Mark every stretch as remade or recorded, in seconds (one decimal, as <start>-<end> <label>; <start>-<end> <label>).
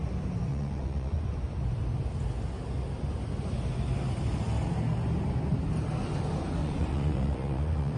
0.0-0.5 recorded; 0.5-1.2 remade; 1.2-6.6 recorded; 6.6-8.0 remade